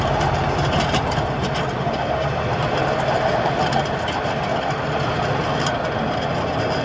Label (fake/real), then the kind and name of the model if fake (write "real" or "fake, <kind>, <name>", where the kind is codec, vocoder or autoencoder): real